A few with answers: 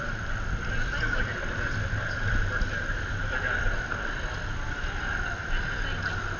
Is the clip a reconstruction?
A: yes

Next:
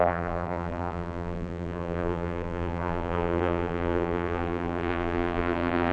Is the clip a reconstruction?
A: yes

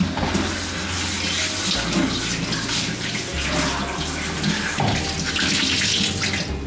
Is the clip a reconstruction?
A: no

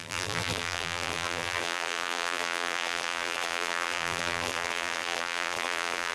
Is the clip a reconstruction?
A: yes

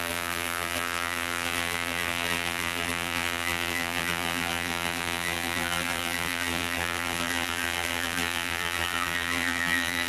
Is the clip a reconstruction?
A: yes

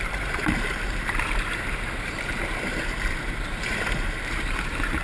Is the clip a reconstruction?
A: yes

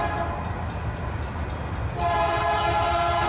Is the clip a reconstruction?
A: no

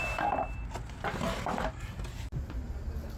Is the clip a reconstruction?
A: no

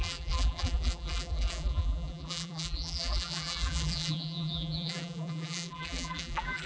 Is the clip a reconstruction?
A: yes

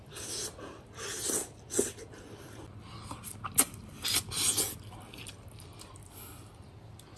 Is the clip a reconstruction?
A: no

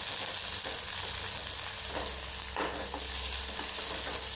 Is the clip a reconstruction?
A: no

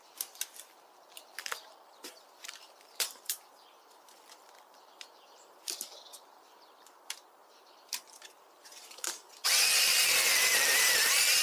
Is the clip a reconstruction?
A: yes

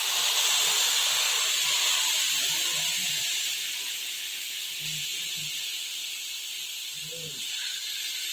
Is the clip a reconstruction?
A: no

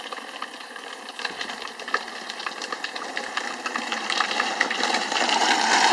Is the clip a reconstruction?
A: yes